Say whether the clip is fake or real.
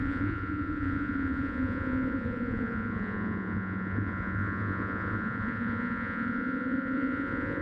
fake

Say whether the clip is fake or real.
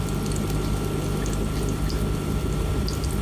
real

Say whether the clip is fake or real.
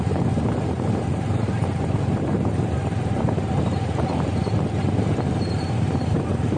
fake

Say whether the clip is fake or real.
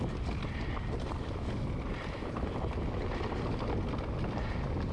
real